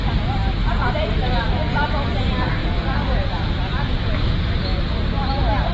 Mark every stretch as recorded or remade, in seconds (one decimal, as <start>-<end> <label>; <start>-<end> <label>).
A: 0.0-2.6 recorded; 2.6-5.0 remade; 5.0-5.7 recorded